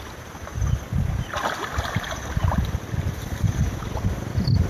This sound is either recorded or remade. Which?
recorded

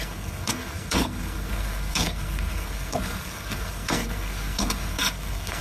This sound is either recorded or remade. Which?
remade